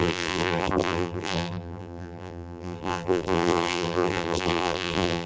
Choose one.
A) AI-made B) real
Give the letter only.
A